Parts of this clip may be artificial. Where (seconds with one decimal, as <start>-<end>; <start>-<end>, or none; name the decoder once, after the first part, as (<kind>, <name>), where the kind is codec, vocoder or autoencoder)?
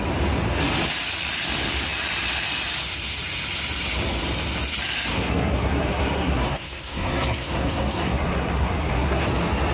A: 5.1-9.2 (codec, SNAC)